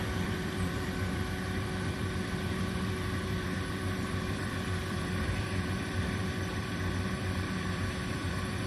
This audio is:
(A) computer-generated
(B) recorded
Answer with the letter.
A